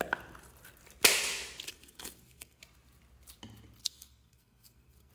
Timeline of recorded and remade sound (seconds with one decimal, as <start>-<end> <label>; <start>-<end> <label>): 0.0-1.7 recorded; 1.7-2.6 remade; 2.6-3.8 recorded; 3.8-5.1 remade